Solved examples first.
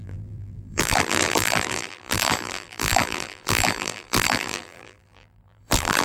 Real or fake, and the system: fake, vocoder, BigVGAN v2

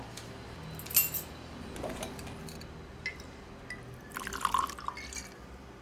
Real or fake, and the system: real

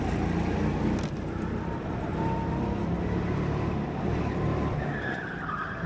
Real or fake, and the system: real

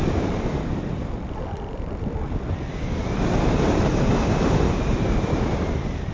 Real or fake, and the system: fake, vocoder, BigVGAN v2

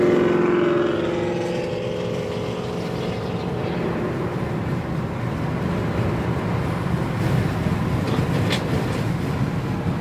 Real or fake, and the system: real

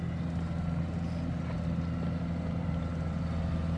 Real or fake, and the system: real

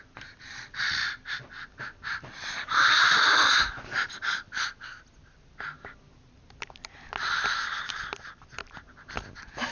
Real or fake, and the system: real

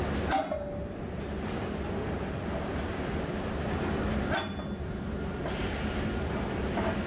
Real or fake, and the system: real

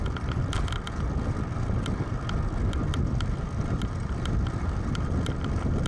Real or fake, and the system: fake, vocoder, BigVGAN v2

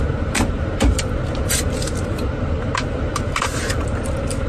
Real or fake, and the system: fake, vocoder, BigVGAN v2